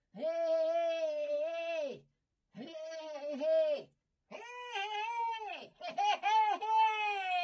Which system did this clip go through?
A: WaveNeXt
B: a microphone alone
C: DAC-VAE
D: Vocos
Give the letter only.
B